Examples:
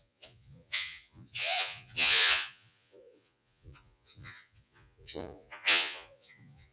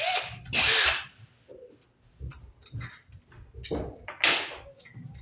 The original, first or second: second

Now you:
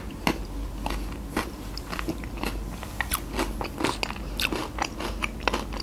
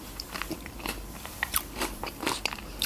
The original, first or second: first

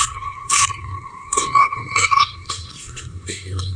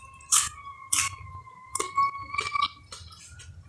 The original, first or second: second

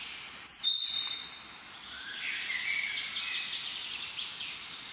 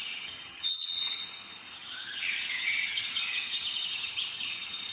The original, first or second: first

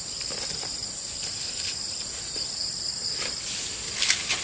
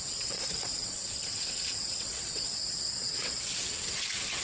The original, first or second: first